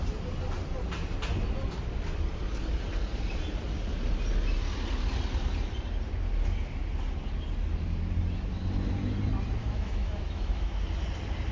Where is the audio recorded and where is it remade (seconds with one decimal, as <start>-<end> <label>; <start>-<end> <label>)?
0.0-9.6 recorded; 9.6-10.8 remade; 10.8-11.5 recorded